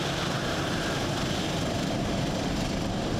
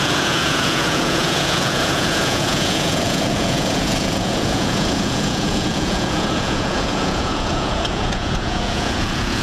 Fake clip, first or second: second